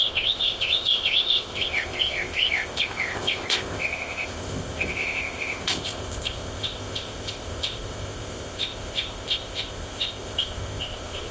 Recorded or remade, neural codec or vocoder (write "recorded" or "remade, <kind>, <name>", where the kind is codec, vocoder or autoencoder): remade, codec, ZipCodec